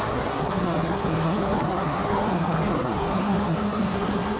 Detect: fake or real fake